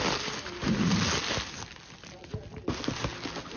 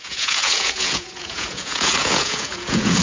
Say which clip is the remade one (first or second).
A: second